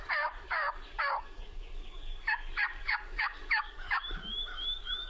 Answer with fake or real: fake